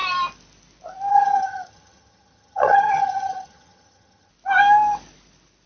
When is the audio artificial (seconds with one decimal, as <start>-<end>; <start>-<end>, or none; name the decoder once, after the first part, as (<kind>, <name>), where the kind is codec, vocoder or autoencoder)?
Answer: 1.1-4.3 (vocoder, HiFi-GAN)